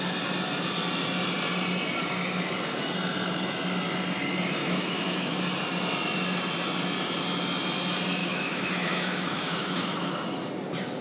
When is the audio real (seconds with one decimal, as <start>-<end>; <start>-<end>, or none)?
0.0-4.6; 5.4-8.2; 10.1-11.0